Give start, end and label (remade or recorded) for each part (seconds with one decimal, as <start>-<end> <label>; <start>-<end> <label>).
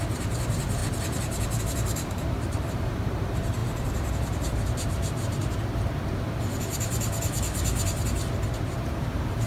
0.0-0.8 remade; 0.8-1.6 recorded; 1.6-5.4 remade; 5.4-8.7 recorded; 8.7-9.5 remade